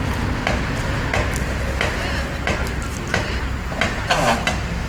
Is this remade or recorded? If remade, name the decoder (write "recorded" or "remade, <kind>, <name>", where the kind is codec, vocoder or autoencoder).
recorded